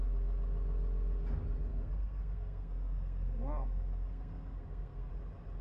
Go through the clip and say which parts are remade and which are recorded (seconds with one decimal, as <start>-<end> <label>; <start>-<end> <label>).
0.0-1.7 recorded; 1.7-5.1 remade; 5.1-5.6 recorded